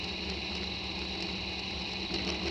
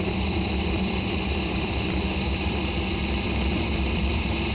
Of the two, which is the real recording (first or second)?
first